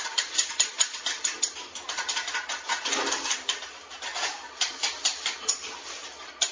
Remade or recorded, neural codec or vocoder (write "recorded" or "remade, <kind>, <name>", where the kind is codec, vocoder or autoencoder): recorded